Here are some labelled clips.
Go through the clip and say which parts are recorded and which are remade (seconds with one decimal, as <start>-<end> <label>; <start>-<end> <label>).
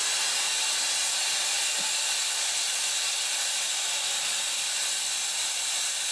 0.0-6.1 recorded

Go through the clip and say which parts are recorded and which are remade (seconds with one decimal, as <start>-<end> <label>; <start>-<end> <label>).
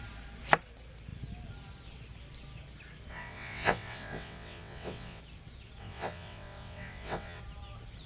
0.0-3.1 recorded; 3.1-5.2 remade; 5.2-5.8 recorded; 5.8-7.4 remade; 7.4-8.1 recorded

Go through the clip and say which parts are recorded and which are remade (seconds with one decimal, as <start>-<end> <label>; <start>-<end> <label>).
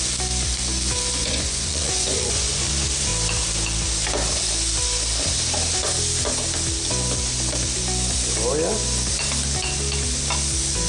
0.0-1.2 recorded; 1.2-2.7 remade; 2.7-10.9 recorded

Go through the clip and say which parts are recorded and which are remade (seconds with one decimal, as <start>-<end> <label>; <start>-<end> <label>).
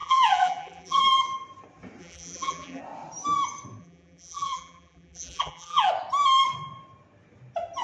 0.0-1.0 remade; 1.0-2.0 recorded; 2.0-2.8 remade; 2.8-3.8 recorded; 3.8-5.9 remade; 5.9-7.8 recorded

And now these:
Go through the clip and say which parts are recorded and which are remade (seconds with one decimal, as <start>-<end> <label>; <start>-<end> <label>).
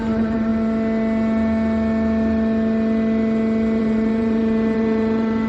0.0-0.5 remade; 0.5-3.8 recorded; 3.8-5.5 remade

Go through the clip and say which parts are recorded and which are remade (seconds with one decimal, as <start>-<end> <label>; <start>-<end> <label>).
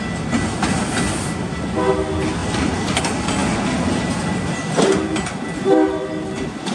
0.0-2.4 recorded; 2.4-3.0 remade; 3.0-6.7 recorded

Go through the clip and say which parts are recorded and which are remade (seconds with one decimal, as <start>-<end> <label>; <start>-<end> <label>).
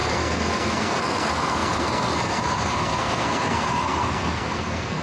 0.0-5.0 remade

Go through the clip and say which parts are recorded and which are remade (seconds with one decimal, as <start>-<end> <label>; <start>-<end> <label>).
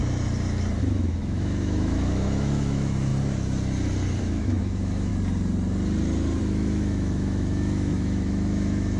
0.0-0.8 recorded; 0.8-3.1 remade; 3.1-4.2 recorded; 4.2-5.1 remade; 5.1-6.4 recorded; 6.4-9.0 remade